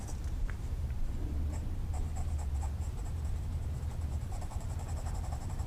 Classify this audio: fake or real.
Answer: fake